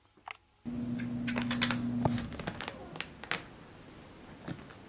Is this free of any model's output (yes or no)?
yes